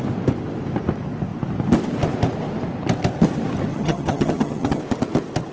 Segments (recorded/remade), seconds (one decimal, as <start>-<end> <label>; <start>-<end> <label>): 0.0-3.7 recorded; 3.7-4.8 remade; 4.8-5.5 recorded